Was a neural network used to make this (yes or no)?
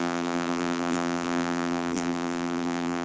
yes